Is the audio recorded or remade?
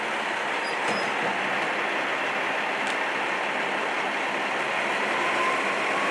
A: recorded